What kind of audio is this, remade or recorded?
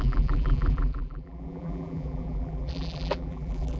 remade